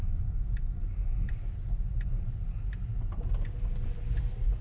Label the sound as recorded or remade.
recorded